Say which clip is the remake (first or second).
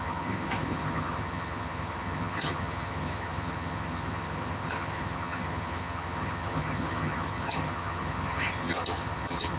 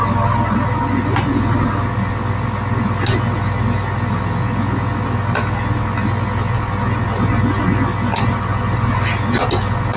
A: first